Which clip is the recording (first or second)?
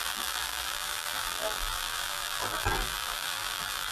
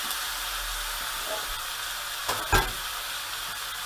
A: second